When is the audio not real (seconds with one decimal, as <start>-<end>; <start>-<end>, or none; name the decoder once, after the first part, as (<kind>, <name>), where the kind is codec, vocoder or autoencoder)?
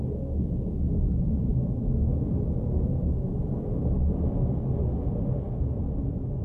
1.5-2.3 (autoencoder, DAC-VAE)